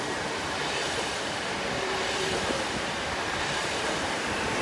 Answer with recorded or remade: remade